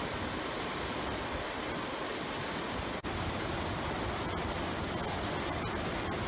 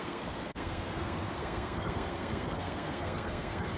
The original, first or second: first